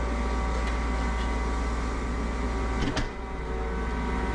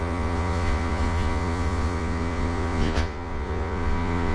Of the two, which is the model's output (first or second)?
second